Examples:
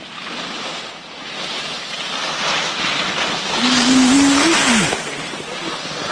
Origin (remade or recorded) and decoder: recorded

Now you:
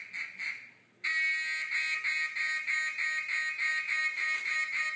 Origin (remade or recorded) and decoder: recorded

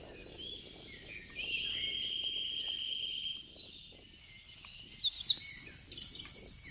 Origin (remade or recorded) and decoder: recorded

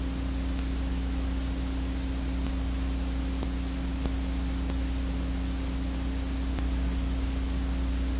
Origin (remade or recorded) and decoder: recorded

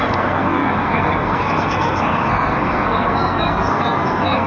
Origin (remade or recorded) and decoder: remade, codec, SNAC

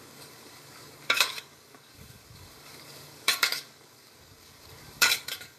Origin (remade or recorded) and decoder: remade, codec, DAC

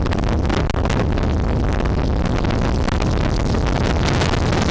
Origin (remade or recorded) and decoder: recorded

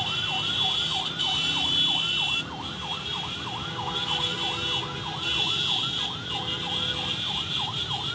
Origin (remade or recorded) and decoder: recorded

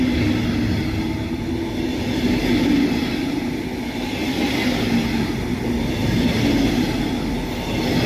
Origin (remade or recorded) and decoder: recorded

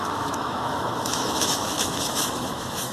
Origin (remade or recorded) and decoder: remade, autoencoder, DAC-VAE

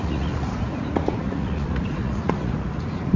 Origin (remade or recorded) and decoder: remade, vocoder, Vocos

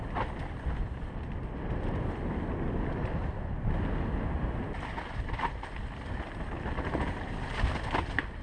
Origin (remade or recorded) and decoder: recorded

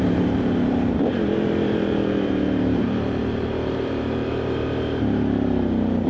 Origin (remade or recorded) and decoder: remade, vocoder, BigVGAN v2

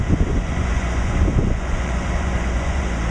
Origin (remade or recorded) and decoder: remade, vocoder, Vocos